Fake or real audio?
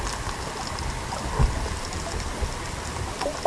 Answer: real